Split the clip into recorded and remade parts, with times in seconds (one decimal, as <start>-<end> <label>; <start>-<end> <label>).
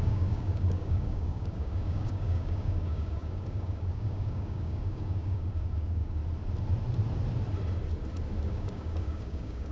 0.0-6.2 remade; 6.2-8.4 recorded; 8.4-9.7 remade